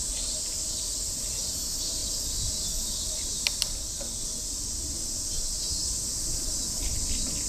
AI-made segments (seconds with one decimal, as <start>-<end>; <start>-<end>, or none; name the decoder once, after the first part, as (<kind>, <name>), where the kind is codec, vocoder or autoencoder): 2.0-6.5 (vocoder, BigVGAN v2)